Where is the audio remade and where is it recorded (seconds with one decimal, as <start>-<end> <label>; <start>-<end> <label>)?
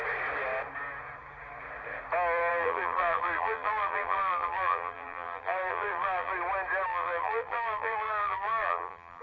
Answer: 0.0-2.5 recorded; 2.5-6.3 remade; 6.3-6.9 recorded; 6.9-9.2 remade